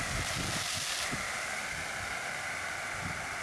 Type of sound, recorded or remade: recorded